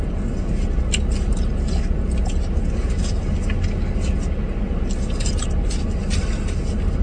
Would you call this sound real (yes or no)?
yes